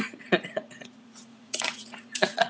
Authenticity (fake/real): fake